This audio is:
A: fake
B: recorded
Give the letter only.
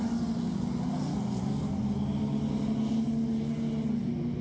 B